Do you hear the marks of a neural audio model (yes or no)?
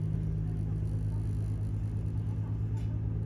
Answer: no